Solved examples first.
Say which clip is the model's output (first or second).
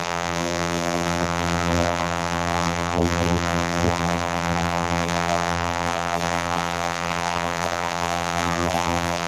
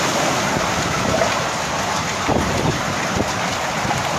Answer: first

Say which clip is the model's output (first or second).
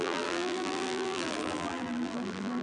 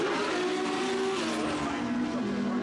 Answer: first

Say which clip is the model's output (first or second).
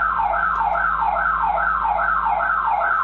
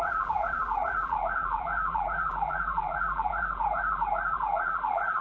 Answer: second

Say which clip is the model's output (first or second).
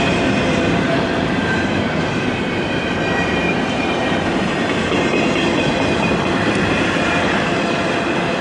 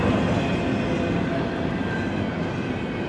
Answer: first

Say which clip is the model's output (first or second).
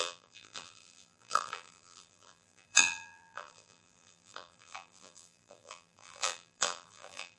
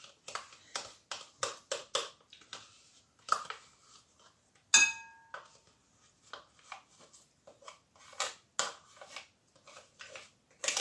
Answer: first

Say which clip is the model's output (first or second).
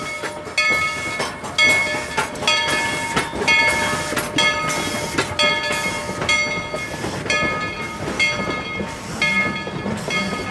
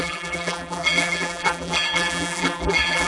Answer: second